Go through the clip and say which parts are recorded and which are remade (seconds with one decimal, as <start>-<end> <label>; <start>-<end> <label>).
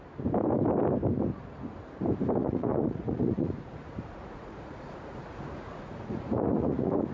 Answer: 0.0-2.4 recorded; 2.4-7.1 remade